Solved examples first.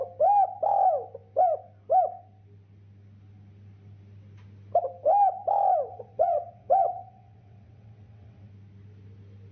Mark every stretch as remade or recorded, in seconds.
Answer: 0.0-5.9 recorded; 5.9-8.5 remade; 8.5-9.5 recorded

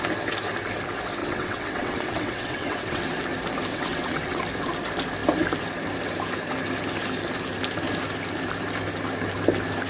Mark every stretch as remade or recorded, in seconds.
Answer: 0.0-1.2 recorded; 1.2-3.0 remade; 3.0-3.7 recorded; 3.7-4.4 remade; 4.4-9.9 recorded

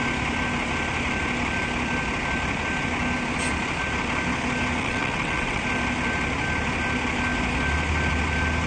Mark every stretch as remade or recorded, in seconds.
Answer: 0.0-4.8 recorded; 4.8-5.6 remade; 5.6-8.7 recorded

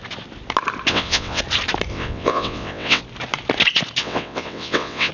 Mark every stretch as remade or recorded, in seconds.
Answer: 0.0-0.9 recorded; 0.9-1.4 remade; 1.4-1.9 recorded; 1.9-3.0 remade; 3.0-4.0 recorded; 4.0-5.1 remade

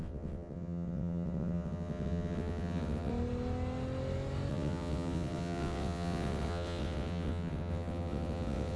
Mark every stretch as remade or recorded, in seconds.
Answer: 0.0-3.1 remade; 3.1-4.5 recorded; 4.5-8.8 remade

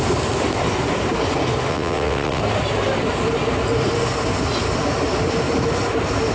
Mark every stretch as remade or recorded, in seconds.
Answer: 0.0-1.7 recorded; 1.7-2.4 remade; 2.4-6.3 recorded

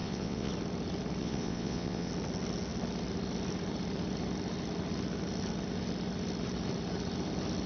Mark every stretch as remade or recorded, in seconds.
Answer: 0.0-0.5 remade; 0.5-1.2 recorded; 1.2-2.1 remade; 2.1-7.7 recorded